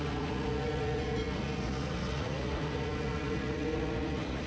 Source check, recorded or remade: remade